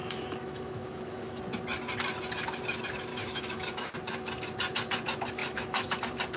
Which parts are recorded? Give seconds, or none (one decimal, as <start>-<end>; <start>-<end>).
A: 1.4-3.1; 3.9-5.4; 6.0-6.4